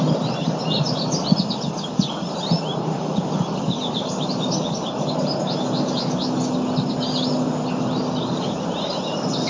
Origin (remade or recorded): recorded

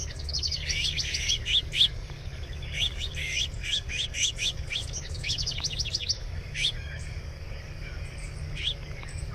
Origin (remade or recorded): remade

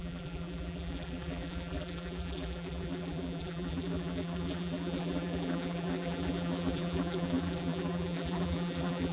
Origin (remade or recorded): remade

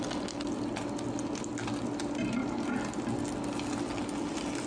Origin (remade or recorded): recorded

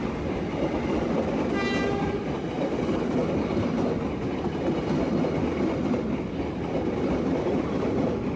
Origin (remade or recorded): recorded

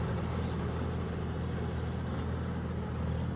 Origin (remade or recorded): recorded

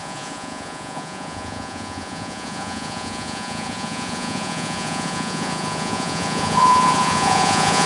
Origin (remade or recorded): remade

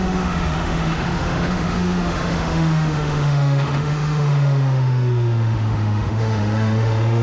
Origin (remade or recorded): remade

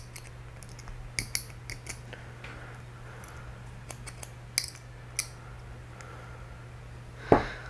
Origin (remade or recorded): recorded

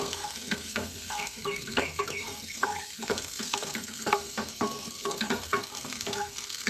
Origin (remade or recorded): remade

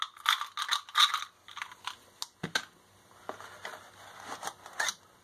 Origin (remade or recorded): recorded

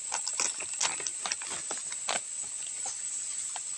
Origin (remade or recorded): recorded